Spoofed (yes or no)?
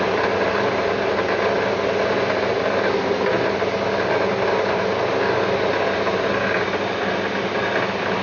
no